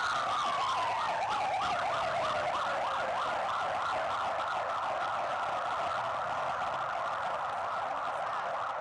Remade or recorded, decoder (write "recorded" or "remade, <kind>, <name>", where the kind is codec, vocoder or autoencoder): recorded